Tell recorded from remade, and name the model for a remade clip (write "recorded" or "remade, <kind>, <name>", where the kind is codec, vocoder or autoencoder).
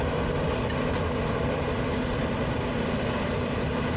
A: remade, vocoder, BigVGAN v2